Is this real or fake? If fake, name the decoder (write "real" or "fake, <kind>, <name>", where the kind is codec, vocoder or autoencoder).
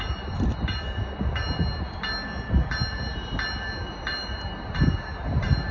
real